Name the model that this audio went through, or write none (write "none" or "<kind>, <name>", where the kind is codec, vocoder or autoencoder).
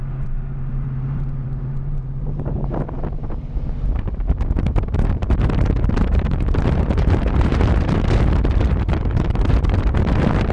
vocoder, BigVGAN v2